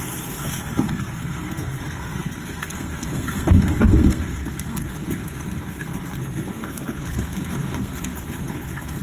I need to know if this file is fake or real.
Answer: fake